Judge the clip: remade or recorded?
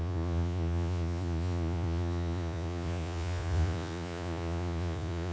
remade